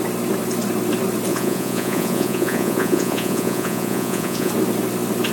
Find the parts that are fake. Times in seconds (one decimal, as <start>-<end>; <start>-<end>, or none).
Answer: 1.3-4.5